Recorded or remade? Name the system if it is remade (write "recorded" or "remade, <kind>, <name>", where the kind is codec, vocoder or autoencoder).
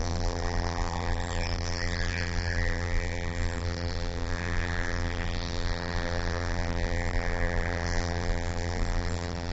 remade, vocoder, BigVGAN v2